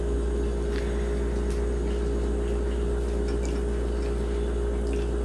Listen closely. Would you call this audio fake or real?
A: real